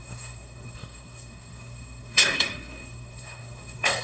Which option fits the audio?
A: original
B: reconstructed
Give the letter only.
B